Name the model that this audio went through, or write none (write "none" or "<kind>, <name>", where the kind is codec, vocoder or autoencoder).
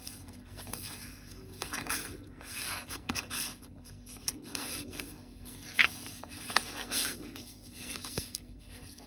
codec, SNAC